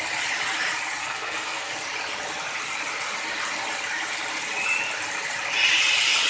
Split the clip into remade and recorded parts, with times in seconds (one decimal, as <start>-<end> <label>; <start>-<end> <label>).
0.0-1.0 recorded; 1.0-1.7 remade; 1.7-6.3 recorded